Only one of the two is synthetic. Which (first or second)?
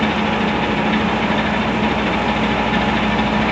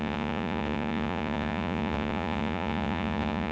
second